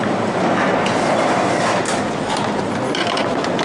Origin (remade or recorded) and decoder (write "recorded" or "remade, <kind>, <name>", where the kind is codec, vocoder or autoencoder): recorded